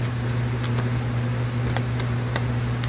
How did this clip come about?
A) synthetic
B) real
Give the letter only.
B